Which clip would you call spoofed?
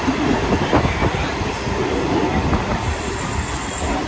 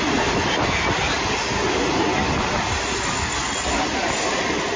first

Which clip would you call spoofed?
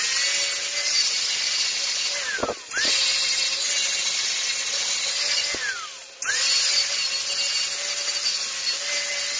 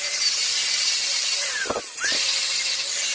second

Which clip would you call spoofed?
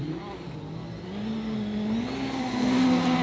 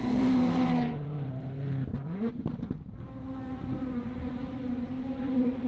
second